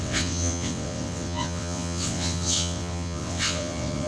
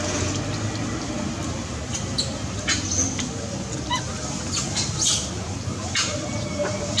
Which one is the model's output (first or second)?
first